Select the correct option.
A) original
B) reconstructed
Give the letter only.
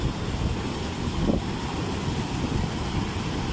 A